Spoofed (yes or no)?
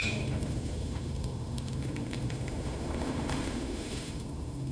yes